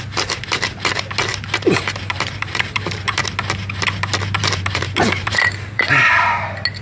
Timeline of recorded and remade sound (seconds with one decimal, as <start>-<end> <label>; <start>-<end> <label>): 0.0-1.3 recorded; 1.3-3.2 remade; 3.2-4.4 recorded; 4.4-6.1 remade; 6.1-6.8 recorded